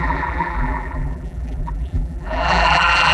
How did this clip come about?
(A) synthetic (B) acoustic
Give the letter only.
A